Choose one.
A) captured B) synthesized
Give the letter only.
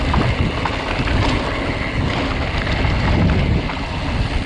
A